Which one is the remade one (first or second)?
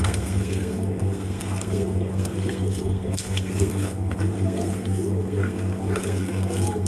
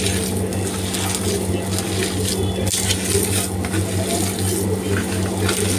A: first